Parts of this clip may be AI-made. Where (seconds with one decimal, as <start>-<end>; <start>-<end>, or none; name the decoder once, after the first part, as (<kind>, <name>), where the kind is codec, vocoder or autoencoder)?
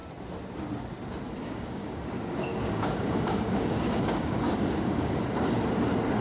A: 1.4-5.1 (codec, DAC)